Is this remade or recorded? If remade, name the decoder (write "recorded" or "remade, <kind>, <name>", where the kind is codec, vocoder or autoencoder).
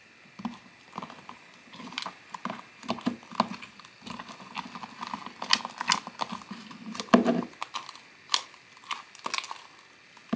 recorded